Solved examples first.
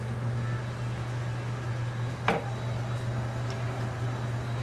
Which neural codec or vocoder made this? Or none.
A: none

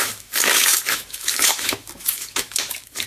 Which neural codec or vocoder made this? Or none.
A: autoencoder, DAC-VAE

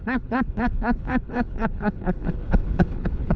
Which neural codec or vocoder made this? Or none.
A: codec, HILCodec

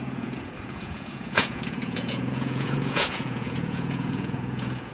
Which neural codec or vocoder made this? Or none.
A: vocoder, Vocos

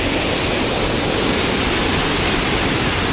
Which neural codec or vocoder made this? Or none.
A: none